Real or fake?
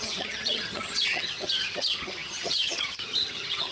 fake